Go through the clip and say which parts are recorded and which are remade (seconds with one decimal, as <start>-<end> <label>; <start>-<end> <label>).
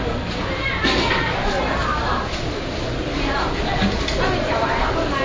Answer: 0.0-5.2 recorded